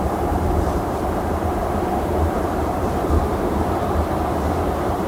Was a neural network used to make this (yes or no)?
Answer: yes